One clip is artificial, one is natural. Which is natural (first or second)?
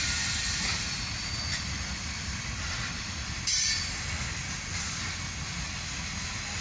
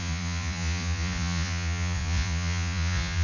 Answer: first